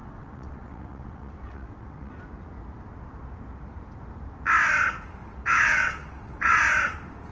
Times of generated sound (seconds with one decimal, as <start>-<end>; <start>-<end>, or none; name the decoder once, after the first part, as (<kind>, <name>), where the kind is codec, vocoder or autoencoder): 0.0-2.1 (vocoder, WaveNeXt); 5.2-6.6